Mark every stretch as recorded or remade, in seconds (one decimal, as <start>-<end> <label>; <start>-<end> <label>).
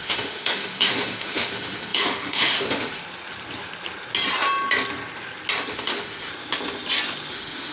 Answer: 0.0-3.0 remade; 3.0-5.7 recorded; 5.7-6.3 remade; 6.3-7.3 recorded; 7.3-7.7 remade